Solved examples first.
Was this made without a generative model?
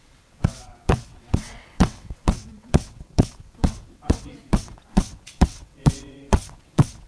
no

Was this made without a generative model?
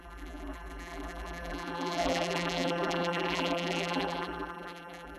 no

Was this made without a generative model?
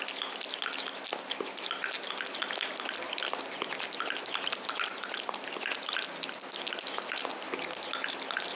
yes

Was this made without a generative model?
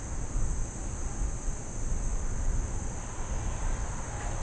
yes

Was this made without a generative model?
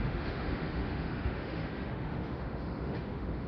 no